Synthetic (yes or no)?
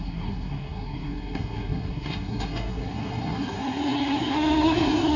yes